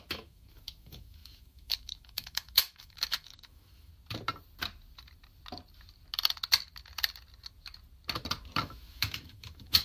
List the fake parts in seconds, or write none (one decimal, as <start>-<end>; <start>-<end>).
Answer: 0.0-3.9; 8.6-9.8